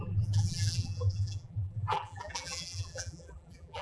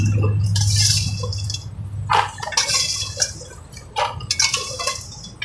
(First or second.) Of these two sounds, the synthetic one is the first